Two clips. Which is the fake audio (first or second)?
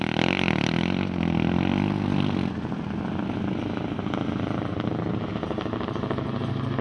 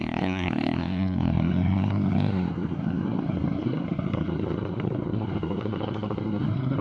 second